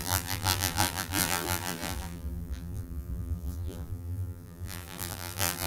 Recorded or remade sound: remade